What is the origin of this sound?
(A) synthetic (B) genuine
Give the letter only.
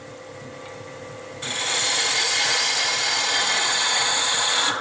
B